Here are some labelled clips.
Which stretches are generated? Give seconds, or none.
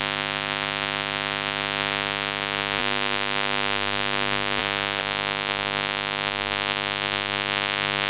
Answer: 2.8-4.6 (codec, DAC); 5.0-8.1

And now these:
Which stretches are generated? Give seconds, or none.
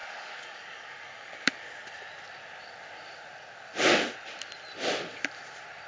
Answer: 0.0-1.5 (codec, DAC)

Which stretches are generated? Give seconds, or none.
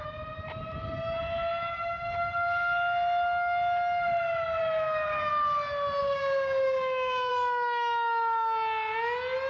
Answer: 4.6-5.3 (codec, DAC); 6.0-7.3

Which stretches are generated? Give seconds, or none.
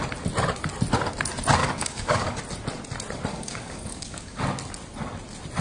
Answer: 1.6-2.4 (codec, DAC); 3.3-4.4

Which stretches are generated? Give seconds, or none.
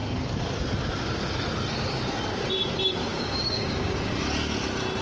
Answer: 3.1-4.1 (codec, DAC)